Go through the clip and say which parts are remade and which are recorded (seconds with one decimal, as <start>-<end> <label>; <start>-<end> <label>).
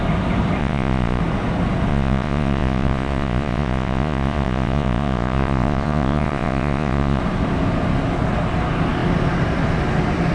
0.0-0.6 recorded; 0.6-1.2 remade; 1.2-1.9 recorded; 1.9-7.2 remade; 7.2-10.3 recorded